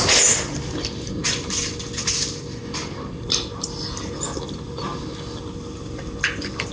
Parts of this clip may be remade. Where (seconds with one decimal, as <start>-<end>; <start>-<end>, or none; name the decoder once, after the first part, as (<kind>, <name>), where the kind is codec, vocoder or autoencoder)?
none